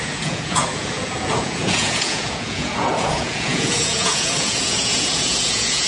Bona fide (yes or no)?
no